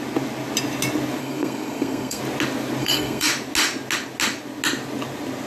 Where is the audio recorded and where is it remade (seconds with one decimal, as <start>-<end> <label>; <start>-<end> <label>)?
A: 0.0-1.2 recorded; 1.2-2.2 remade; 2.2-2.8 recorded; 2.8-3.3 remade; 3.3-5.5 recorded